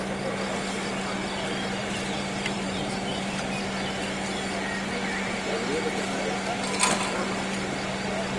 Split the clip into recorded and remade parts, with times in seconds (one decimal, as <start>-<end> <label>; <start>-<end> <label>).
0.0-1.8 recorded; 1.8-3.6 remade; 3.6-8.4 recorded